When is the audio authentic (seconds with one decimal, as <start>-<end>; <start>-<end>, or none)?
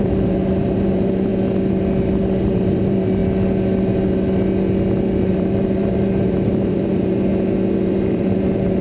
1.3-2.4; 3.2-5.2; 7.3-7.9